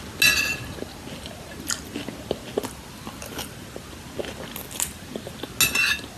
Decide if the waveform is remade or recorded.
recorded